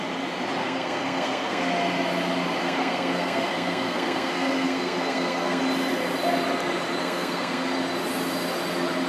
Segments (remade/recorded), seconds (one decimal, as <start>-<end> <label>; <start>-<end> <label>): 0.0-0.6 recorded; 0.6-1.6 remade; 1.6-2.6 recorded; 2.6-5.6 remade; 5.6-7.0 recorded; 7.0-7.7 remade; 7.7-9.1 recorded